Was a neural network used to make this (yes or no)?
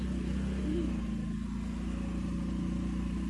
no